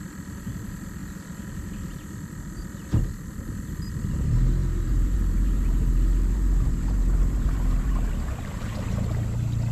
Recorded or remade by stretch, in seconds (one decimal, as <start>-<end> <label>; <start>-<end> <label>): 0.0-4.6 recorded; 4.6-8.1 remade; 8.1-9.7 recorded